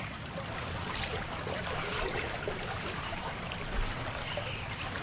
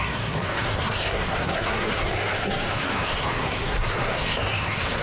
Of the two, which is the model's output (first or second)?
second